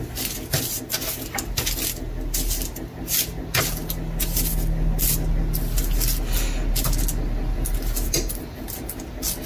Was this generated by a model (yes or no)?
no